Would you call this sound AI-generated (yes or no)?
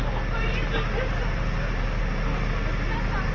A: no